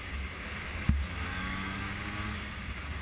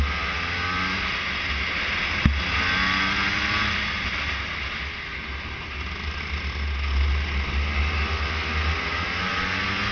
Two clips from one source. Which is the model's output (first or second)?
first